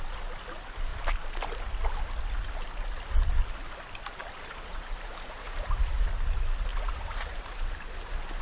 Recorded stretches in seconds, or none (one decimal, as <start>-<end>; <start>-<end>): 0.0-4.2; 6.1-6.7